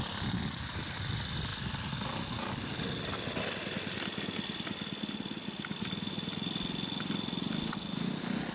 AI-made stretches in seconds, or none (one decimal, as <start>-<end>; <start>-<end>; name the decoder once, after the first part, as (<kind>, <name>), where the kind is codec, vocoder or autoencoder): none